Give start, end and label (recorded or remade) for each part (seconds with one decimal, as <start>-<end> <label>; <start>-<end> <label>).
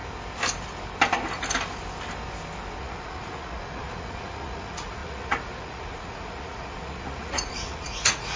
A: 0.0-2.8 recorded; 2.8-8.4 remade